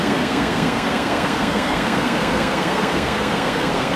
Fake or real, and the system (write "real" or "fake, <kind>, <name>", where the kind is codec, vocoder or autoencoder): fake, codec, SNAC